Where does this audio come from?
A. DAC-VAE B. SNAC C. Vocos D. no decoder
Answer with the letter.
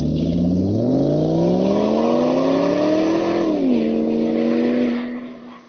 D